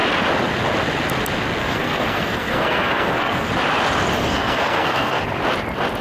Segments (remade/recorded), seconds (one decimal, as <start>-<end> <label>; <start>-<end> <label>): 0.0-1.6 recorded; 1.6-3.5 remade; 3.5-4.2 recorded; 4.2-5.2 remade; 5.2-6.0 recorded